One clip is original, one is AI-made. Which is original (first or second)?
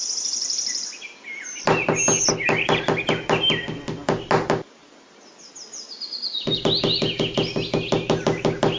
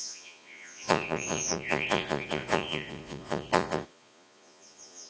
first